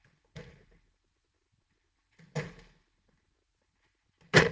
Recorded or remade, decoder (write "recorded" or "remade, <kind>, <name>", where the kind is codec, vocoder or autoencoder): recorded